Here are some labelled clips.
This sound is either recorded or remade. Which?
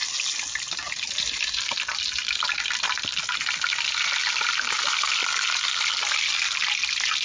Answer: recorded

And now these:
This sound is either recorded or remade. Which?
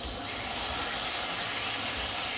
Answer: recorded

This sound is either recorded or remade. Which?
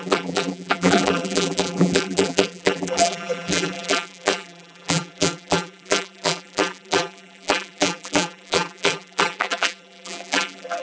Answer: remade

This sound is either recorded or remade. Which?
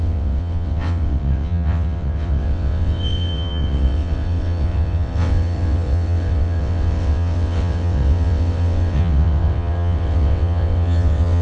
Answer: remade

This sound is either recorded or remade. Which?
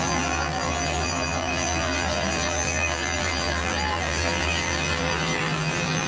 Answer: remade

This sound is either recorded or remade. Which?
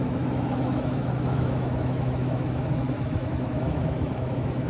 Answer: remade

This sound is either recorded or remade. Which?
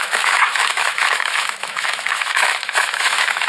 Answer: remade